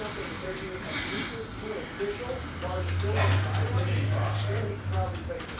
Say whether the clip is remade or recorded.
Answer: recorded